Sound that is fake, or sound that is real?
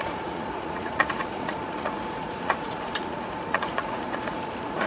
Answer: fake